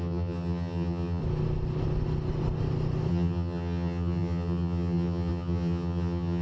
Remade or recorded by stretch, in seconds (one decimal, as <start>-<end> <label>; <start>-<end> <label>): 0.0-1.2 remade; 1.2-3.1 recorded; 3.1-6.4 remade